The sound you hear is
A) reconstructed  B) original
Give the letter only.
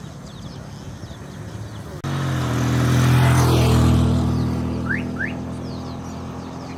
B